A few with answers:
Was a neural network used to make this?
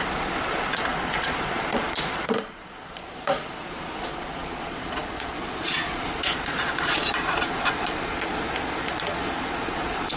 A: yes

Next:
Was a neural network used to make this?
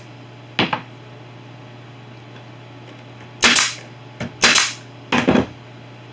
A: no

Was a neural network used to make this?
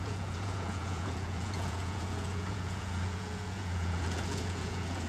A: yes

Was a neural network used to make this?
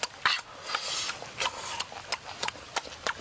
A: no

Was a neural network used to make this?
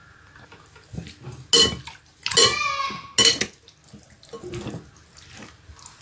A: no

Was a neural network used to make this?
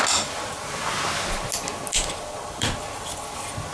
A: no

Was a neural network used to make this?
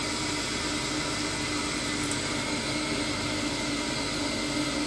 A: no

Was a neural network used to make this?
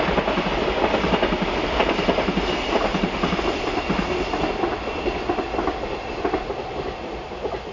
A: no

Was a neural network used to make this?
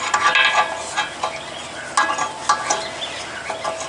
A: no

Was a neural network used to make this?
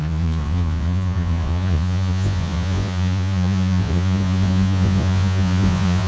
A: yes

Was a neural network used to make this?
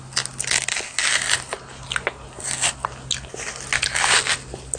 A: no